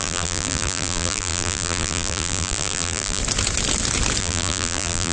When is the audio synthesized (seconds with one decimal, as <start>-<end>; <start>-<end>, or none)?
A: 0.0-3.2; 4.2-5.1